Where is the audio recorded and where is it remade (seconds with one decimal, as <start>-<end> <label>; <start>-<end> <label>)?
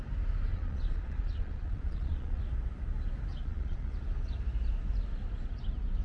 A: 0.0-0.5 recorded; 0.5-2.4 remade; 2.4-3.3 recorded; 3.3-3.9 remade; 3.9-6.0 recorded